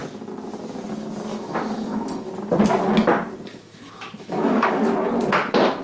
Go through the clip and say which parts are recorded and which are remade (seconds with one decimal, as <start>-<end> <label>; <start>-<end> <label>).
0.0-1.3 recorded; 1.3-2.3 remade; 2.3-3.5 recorded; 3.5-4.8 remade; 4.8-5.8 recorded